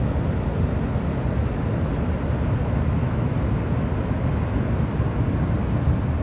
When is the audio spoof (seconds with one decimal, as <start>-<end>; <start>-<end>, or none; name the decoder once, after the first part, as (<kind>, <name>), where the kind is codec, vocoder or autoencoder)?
2.6-3.3 (autoencoder, DAC-VAE)